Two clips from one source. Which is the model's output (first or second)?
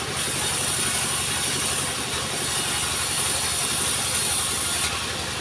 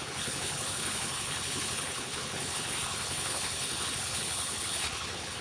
second